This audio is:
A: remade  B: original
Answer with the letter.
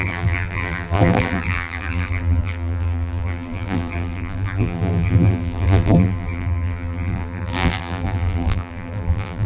A